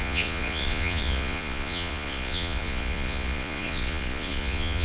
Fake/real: fake